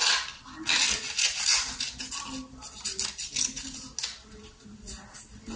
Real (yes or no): yes